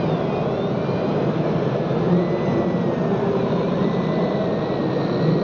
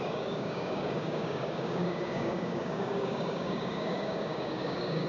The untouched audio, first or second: first